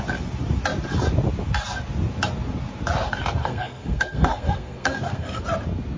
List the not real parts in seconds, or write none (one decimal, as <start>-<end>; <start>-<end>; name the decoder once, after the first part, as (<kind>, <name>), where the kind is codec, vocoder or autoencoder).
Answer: 3.4-5.4 (codec, SNAC)